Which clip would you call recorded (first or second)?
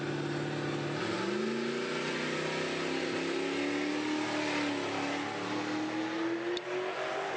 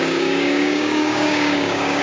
first